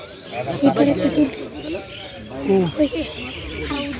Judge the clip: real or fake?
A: real